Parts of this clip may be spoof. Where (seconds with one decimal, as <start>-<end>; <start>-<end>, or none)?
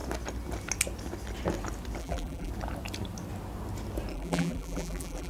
2.0-2.5; 4.1-5.3